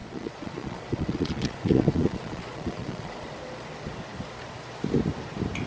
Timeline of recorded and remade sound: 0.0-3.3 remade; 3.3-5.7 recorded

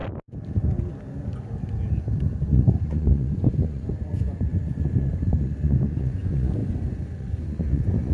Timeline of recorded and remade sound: 0.0-2.4 recorded; 2.4-8.1 remade

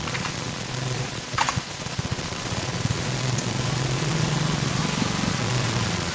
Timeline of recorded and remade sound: 0.0-4.8 remade; 4.8-5.3 recorded; 5.3-6.1 remade

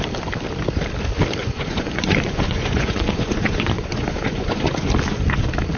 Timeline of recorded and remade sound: 0.0-1.4 recorded; 1.4-4.9 remade; 4.9-5.8 recorded

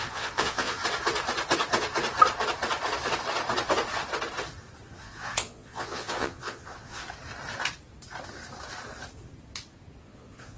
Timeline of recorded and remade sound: 0.0-0.8 remade; 0.8-5.0 recorded; 5.0-7.0 remade; 7.0-10.0 recorded; 10.0-10.6 remade